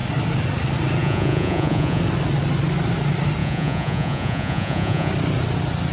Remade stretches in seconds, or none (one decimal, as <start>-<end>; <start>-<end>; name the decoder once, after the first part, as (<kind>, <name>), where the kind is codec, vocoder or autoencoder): 1.0-2.0 (vocoder, Vocos); 3.4-5.1

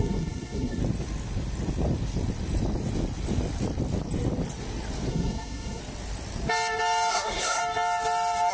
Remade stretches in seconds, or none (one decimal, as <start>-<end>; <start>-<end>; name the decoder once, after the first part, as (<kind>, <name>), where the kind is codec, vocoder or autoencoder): 0.0-0.8 (codec, SNAC); 5.1-5.8; 7.1-7.6

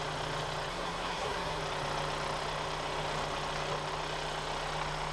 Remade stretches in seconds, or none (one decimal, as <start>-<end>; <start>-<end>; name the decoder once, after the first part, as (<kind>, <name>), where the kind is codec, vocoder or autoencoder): 0.7-1.6 (codec, SNAC)

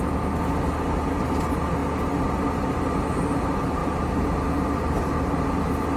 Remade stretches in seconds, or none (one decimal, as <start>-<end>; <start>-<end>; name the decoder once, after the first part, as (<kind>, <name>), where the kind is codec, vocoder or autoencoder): none